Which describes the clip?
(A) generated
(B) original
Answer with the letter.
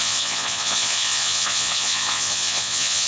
A